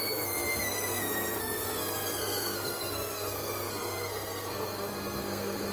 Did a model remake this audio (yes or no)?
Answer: yes